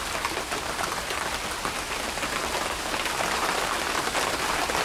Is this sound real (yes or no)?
yes